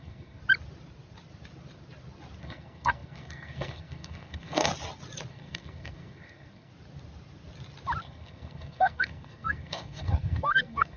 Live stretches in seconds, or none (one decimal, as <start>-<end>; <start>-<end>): 0.4-2.4; 4.7-5.3; 6.7-8.0